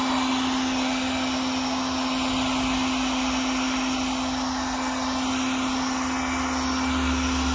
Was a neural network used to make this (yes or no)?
no